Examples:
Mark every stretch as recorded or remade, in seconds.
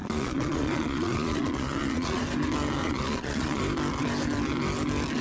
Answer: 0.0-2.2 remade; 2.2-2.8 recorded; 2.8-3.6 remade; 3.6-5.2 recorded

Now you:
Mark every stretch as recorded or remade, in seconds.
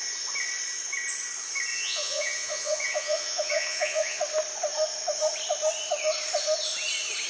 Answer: 0.0-1.7 recorded; 1.7-4.2 remade; 4.2-7.3 recorded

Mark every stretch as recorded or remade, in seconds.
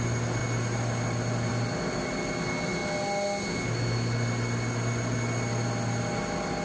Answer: 0.0-6.6 recorded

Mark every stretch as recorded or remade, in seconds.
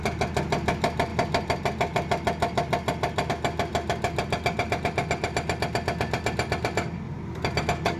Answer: 0.0-8.0 recorded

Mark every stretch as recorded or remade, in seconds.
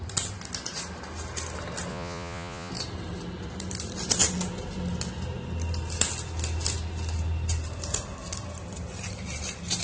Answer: 0.0-1.9 recorded; 1.9-2.7 remade; 2.7-9.8 recorded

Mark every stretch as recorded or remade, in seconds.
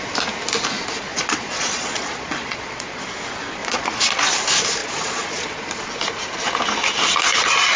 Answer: 0.0-1.1 recorded; 1.1-3.0 remade; 3.0-3.6 recorded; 3.6-4.1 remade; 4.1-4.8 recorded; 4.8-5.8 remade; 5.8-7.8 recorded